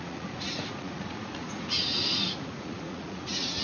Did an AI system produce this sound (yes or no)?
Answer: yes